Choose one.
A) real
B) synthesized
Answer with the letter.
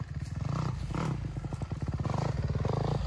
A